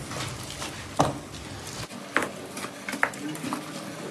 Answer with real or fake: real